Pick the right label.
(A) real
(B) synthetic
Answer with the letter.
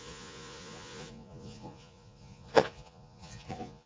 B